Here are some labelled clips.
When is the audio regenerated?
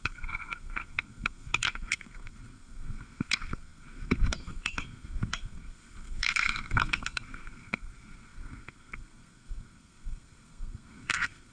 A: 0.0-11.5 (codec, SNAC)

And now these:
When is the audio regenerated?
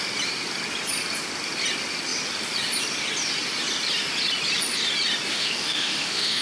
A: 5.3-6.4 (autoencoder, DAC-VAE)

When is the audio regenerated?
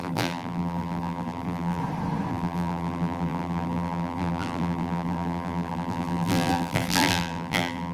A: 0.0-1.8 (vocoder, BigVGAN v2); 2.3-7.9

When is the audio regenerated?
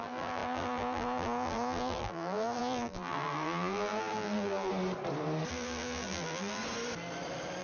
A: 0.0-4.7 (vocoder, BigVGAN v2); 5.5-6.6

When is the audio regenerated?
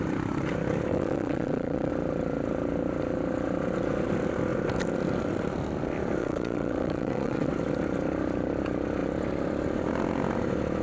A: 0.9-1.9 (vocoder, WaveNeXt); 6.2-7.5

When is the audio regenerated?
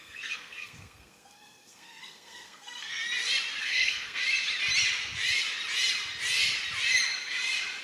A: 0.0-3.0 (codec, SNAC); 3.6-4.2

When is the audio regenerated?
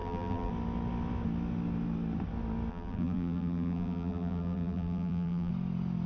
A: 0.0-0.5 (vocoder, BigVGAN v2); 2.7-5.5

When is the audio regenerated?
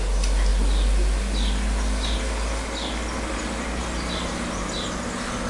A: none